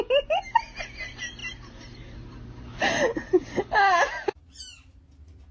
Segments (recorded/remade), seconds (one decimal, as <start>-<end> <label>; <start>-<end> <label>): 0.0-5.5 recorded